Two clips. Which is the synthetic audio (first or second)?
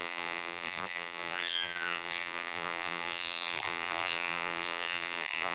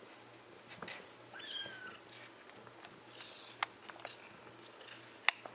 first